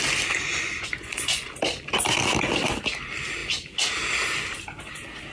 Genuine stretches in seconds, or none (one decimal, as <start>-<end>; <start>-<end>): 0.0-0.5; 1.5-5.3